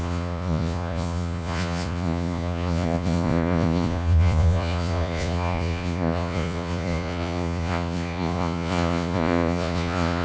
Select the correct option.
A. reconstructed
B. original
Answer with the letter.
A